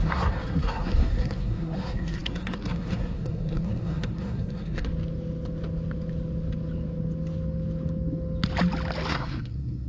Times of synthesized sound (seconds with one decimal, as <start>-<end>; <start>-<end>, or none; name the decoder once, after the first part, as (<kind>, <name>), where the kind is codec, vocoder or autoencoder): 0.0-4.9 (codec, SNAC); 9.1-9.9